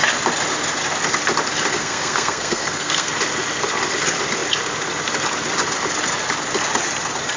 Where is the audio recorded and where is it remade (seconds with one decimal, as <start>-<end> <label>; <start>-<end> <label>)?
0.0-1.7 recorded; 1.7-3.1 remade; 3.1-7.4 recorded